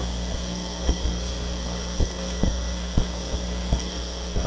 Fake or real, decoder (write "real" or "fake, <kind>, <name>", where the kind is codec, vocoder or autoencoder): fake, codec, SNAC